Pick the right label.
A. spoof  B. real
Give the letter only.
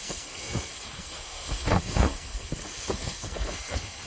A